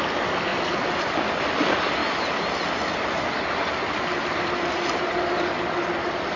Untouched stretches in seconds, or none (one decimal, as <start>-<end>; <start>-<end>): 0.0-6.4